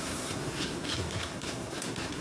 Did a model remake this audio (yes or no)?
yes